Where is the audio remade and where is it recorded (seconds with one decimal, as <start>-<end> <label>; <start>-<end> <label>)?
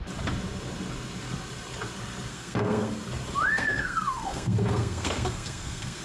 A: 0.0-2.3 recorded; 2.3-2.9 remade; 2.9-3.5 recorded; 3.5-6.0 remade